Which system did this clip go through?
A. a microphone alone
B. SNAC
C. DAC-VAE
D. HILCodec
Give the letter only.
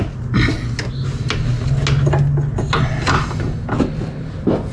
A